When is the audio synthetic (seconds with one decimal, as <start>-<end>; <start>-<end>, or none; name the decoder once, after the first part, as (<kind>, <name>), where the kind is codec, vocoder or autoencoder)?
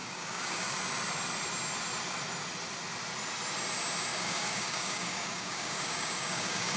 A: 0.0-0.8 (codec, DAC); 4.1-6.8